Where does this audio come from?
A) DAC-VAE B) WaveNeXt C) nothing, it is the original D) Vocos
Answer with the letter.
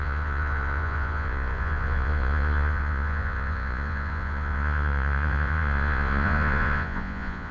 D